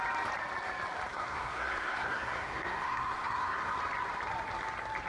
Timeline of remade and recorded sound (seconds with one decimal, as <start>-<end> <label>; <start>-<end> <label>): 0.0-1.1 recorded; 1.1-3.7 remade; 3.7-5.1 recorded